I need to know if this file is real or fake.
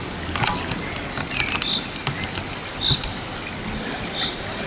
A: real